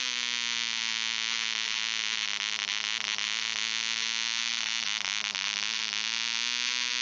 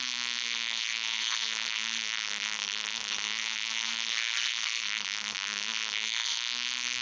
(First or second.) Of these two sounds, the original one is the first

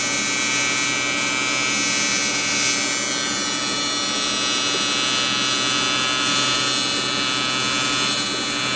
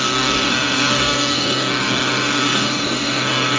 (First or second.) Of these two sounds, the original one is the first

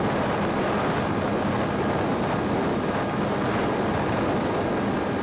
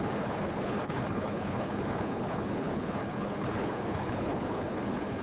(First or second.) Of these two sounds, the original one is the first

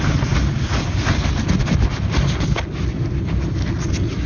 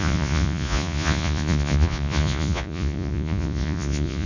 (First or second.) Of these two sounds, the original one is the first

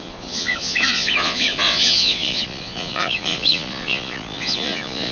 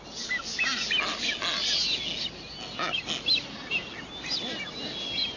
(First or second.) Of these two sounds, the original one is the second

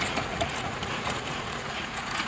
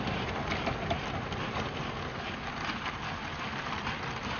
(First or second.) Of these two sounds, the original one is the second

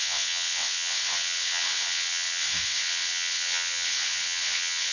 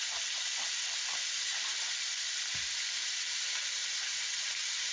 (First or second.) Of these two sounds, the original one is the second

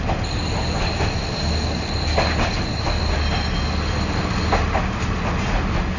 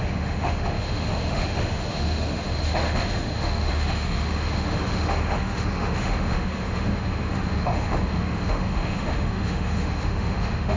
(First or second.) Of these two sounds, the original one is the first